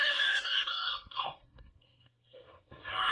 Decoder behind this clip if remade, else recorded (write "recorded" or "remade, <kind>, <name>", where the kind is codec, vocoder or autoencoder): remade, codec, SNAC